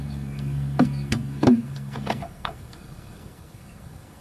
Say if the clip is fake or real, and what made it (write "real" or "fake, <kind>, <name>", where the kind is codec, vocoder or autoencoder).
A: fake, codec, SNAC